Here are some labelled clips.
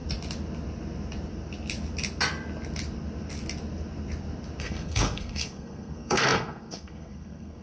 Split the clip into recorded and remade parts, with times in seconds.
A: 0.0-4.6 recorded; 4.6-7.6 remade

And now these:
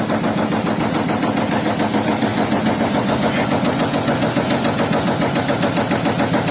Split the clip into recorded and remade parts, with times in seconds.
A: 0.0-2.3 recorded; 2.3-5.4 remade; 5.4-6.5 recorded

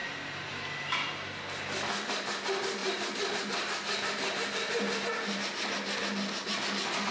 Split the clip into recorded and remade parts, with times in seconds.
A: 0.0-7.1 recorded

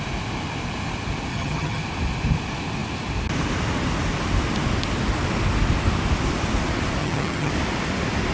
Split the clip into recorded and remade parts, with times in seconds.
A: 0.0-1.3 recorded; 1.3-1.8 remade; 1.8-7.0 recorded; 7.0-7.5 remade; 7.5-8.3 recorded